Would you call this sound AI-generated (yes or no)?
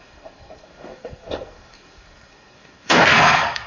yes